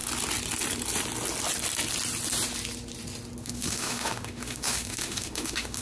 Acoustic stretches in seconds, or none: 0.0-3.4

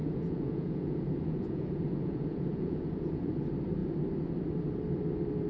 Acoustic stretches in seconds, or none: 3.3-5.5

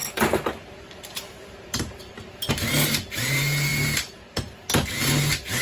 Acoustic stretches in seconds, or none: 2.5-3.7; 4.6-5.6